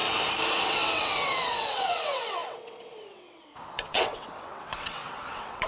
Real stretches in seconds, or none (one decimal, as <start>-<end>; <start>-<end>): 0.0-0.5